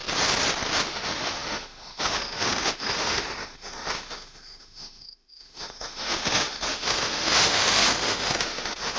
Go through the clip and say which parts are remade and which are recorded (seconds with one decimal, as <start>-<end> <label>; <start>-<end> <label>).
0.0-0.8 recorded; 0.8-9.0 remade